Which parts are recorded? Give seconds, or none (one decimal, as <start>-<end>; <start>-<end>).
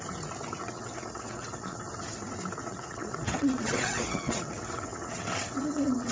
0.0-0.6; 1.8-2.6